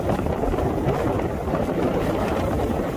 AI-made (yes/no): yes